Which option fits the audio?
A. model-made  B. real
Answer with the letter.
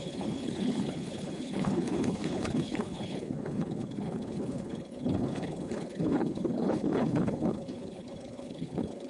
A